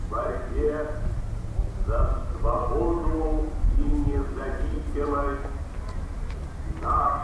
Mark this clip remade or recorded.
recorded